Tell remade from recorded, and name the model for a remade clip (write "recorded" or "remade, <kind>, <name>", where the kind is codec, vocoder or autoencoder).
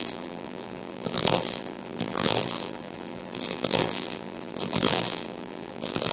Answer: remade, vocoder, BigVGAN v2